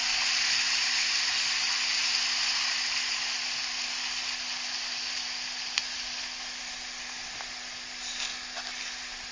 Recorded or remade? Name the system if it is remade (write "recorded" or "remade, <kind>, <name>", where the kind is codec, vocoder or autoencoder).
recorded